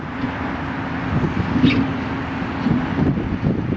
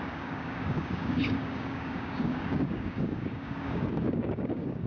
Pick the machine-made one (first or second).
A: second